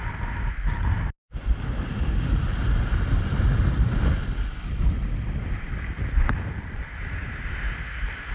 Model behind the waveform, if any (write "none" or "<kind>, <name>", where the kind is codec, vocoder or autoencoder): none